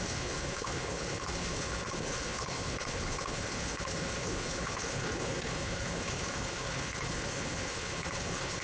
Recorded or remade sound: remade